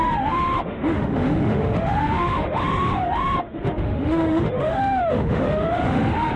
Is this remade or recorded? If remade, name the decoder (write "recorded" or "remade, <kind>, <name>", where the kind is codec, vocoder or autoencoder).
remade, autoencoder, DAC-VAE